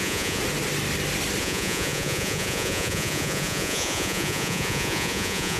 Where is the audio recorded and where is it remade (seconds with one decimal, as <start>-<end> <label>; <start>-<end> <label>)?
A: 0.0-0.4 remade; 0.4-1.4 recorded; 1.4-5.6 remade